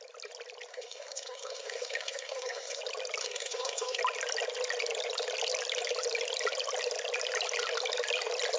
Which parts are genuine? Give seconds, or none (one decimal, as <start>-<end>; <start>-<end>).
0.0-0.7; 2.8-3.2; 4.0-8.6